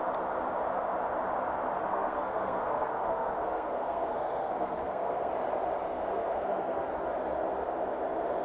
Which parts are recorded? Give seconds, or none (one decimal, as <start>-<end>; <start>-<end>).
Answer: 0.0-1.9; 5.3-5.8; 6.9-8.4